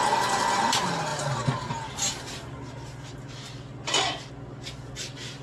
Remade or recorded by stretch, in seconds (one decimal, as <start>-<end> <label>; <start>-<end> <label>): 0.0-5.4 recorded